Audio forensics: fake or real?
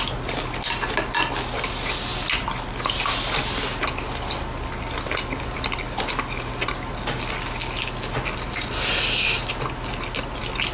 real